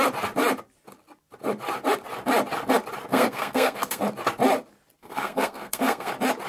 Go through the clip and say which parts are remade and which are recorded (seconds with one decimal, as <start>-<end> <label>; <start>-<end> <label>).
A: 0.0-3.1 recorded; 3.1-4.0 remade; 4.0-5.0 recorded; 5.0-6.1 remade; 6.1-6.5 recorded